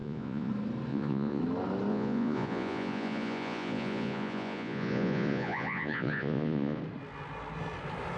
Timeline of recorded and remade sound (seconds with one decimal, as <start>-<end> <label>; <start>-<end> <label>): 0.0-0.5 remade; 0.5-0.9 recorded; 0.9-1.4 remade; 1.4-1.9 recorded; 1.9-6.8 remade; 6.8-8.2 recorded